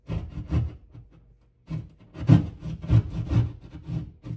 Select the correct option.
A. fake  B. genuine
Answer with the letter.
B